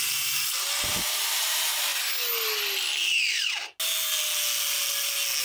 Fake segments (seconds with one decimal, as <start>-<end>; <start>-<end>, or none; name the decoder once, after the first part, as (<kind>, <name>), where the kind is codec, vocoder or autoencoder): 0.0-1.9 (vocoder, BigVGAN v2)